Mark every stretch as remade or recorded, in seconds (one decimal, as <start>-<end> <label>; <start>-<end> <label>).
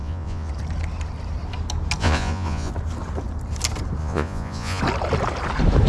0.0-0.5 remade; 0.5-2.0 recorded; 2.0-2.7 remade; 2.7-4.0 recorded; 4.0-4.8 remade; 4.8-5.9 recorded